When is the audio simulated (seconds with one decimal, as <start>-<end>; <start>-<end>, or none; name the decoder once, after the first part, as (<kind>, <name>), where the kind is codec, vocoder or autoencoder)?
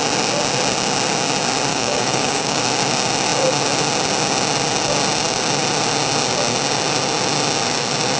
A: 1.7-2.6 (codec, DAC)